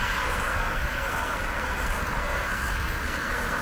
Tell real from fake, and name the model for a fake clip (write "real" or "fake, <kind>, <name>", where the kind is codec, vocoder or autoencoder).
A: fake, codec, SNAC